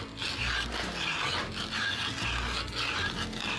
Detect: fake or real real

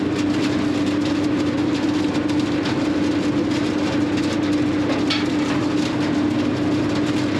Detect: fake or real real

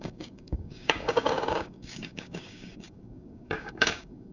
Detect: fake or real fake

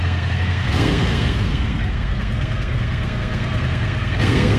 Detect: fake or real fake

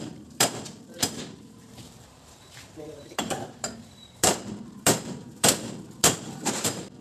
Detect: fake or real fake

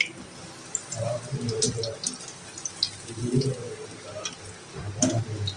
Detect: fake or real real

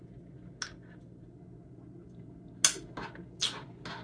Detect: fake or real real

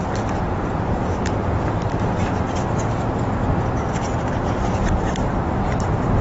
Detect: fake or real real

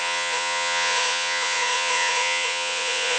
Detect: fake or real fake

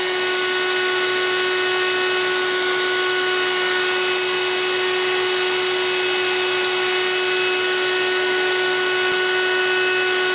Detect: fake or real real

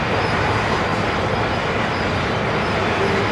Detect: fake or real real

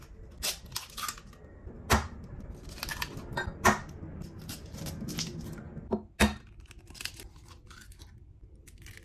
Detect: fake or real real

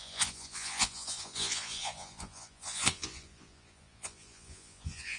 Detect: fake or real fake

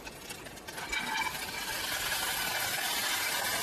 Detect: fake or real real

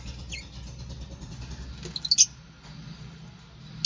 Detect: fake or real real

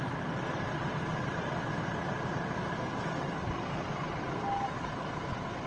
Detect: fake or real real